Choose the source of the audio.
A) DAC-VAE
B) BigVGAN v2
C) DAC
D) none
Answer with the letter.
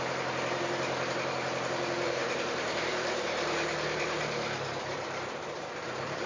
B